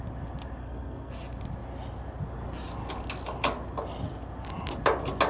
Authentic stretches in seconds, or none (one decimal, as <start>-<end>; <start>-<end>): 0.0-0.6; 1.1-5.3